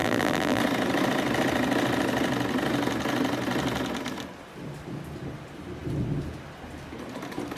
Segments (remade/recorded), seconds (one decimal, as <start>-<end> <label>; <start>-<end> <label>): 0.0-0.6 remade; 0.6-7.6 recorded